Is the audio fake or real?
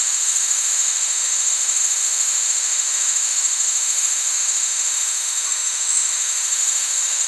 fake